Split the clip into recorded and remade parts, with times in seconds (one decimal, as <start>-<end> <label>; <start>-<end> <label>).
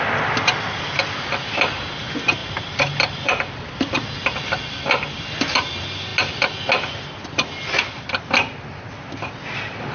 0.0-2.4 recorded; 2.4-4.1 remade; 4.1-9.9 recorded